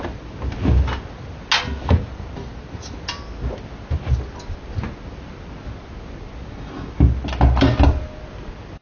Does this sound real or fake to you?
real